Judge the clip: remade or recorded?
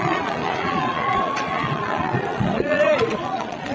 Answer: remade